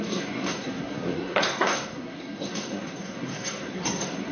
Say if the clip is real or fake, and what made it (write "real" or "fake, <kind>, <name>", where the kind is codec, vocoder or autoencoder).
fake, codec, SNAC